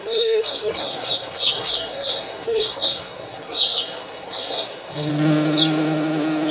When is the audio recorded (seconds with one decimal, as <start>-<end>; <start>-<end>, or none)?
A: 5.1-6.5

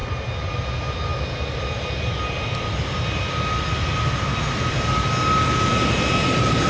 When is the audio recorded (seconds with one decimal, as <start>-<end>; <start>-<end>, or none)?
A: 0.0-6.7

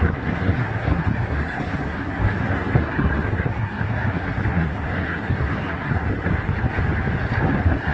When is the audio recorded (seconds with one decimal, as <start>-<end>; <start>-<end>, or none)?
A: 6.3-7.5

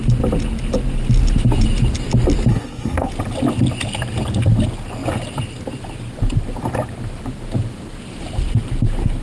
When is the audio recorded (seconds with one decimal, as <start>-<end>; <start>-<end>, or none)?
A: 0.0-2.5; 3.1-9.2

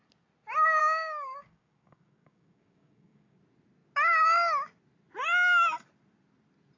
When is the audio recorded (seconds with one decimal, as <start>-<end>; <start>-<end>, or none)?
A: 0.0-0.8; 3.4-6.8

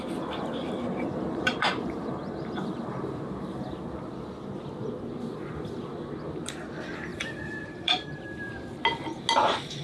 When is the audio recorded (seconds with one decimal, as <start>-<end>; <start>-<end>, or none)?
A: 0.0-0.6; 3.8-7.1; 8.5-9.8

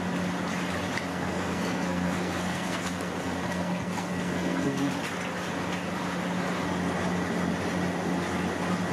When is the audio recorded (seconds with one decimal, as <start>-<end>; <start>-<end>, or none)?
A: 0.0-1.1; 4.9-8.9

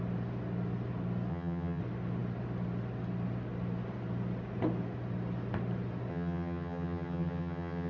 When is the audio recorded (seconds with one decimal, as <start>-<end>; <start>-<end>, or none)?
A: 0.0-1.3; 1.8-6.1